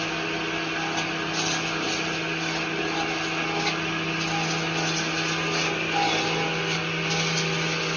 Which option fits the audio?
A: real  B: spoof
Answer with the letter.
A